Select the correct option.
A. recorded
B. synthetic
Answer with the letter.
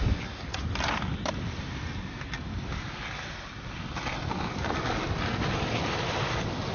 A